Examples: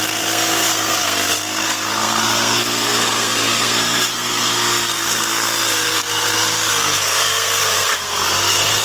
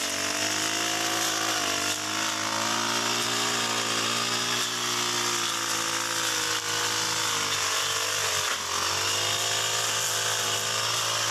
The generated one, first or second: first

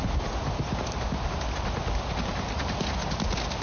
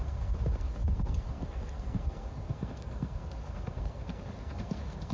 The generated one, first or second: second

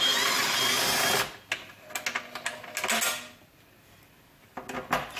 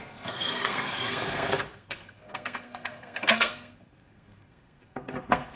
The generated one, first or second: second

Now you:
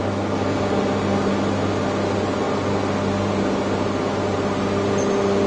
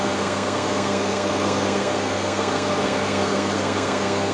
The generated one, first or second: second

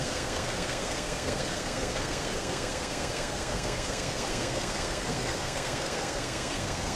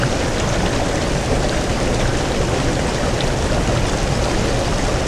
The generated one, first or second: first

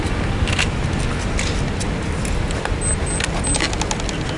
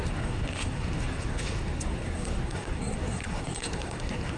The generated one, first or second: second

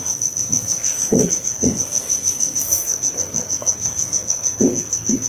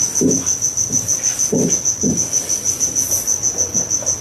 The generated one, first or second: first